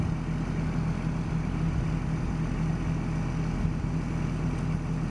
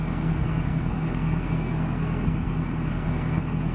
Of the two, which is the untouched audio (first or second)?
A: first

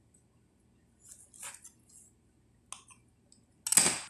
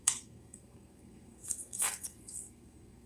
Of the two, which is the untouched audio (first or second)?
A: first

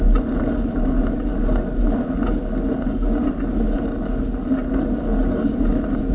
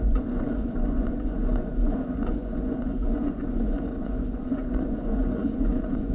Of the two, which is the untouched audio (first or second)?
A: first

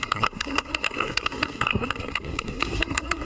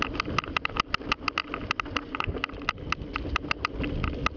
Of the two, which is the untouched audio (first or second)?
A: second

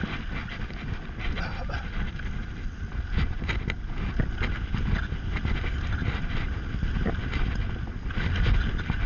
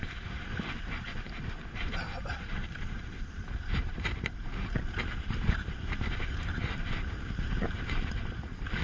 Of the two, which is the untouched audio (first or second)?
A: first